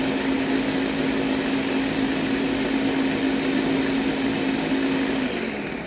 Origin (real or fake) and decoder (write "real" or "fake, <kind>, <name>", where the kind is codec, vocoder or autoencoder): real